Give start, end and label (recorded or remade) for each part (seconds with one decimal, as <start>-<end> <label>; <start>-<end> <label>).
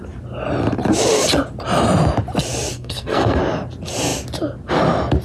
0.0-2.7 recorded; 2.7-3.4 remade; 3.4-5.2 recorded